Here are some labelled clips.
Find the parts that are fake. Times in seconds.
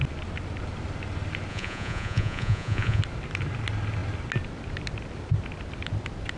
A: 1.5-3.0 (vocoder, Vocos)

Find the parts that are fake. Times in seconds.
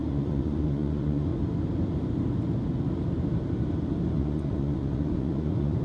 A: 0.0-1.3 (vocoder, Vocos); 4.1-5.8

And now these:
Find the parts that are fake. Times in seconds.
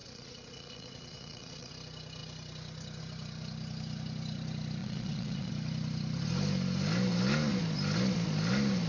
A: 0.0-1.7 (vocoder, Vocos); 4.8-5.5